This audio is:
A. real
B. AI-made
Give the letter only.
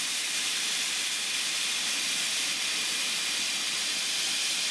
A